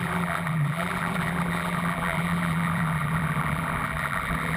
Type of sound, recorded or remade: remade